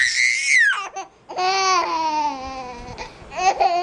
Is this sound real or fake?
real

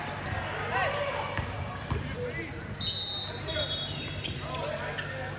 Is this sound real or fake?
real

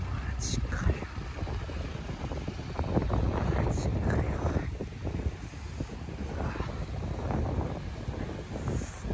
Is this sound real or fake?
real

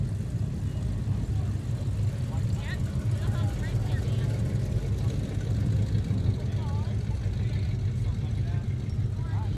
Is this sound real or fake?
real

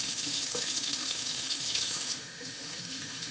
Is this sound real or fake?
fake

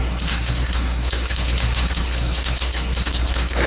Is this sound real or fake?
fake